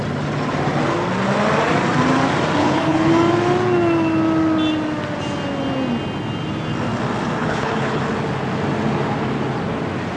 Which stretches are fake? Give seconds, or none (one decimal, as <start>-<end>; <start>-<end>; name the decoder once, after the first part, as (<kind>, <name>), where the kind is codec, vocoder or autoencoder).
2.6-3.1 (codec, HILCodec); 7.4-8.0